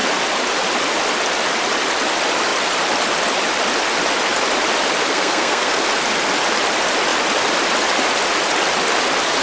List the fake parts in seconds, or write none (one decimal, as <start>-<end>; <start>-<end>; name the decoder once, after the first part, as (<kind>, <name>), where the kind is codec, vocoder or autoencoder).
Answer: 5.1-5.8 (codec, SNAC)